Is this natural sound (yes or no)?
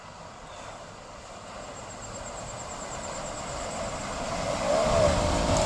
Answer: yes